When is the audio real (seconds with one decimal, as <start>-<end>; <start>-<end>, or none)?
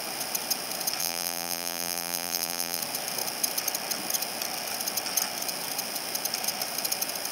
0.0-1.0; 2.8-7.3